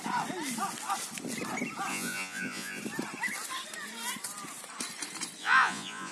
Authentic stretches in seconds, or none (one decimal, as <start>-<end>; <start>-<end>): 0.0-1.9; 2.8-5.4